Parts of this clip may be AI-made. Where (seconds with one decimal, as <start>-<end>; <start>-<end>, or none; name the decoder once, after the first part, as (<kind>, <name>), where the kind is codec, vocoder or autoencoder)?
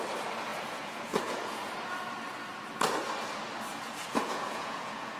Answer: 0.5-1.7 (vocoder, Vocos); 3.7-5.2